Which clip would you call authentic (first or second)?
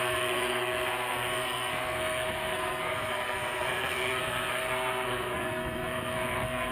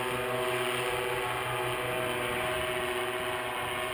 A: second